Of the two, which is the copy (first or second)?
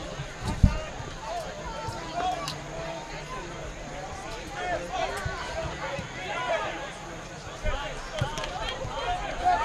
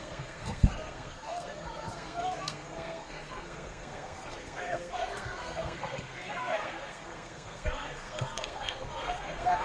second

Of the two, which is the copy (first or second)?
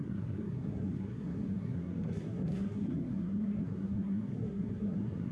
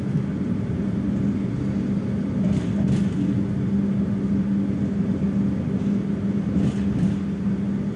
first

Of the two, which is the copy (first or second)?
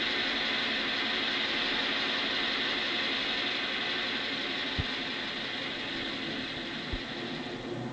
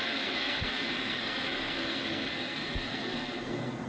second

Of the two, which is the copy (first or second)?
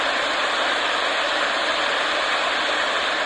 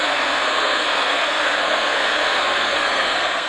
second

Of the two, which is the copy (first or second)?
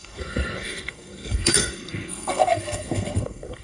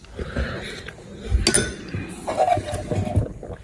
first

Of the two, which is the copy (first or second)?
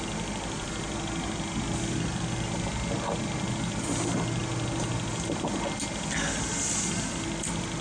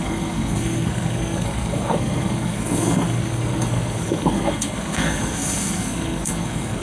second